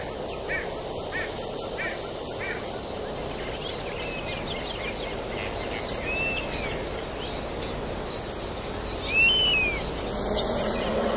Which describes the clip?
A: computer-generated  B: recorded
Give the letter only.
B